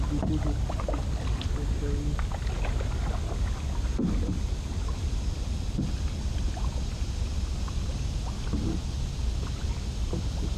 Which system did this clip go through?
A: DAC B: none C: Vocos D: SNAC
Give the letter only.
B